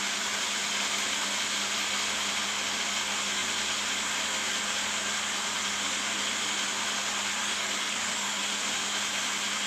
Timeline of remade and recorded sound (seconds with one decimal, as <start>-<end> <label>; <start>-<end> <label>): 0.0-7.4 recorded; 7.4-8.4 remade; 8.4-9.7 recorded